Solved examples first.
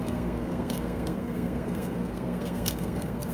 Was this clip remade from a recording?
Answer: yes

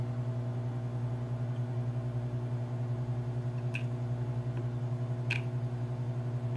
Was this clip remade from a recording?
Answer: no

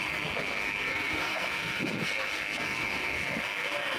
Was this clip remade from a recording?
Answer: yes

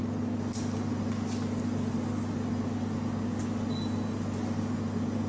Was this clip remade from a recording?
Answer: no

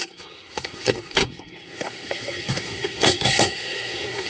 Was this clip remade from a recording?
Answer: yes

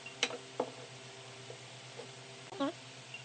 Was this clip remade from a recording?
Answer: no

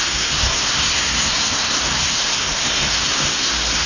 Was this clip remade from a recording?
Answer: yes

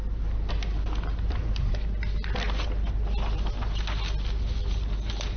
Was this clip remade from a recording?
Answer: no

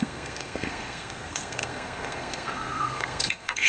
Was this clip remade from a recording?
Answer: yes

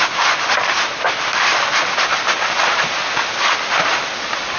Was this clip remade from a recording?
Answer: no